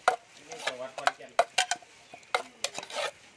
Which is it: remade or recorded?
recorded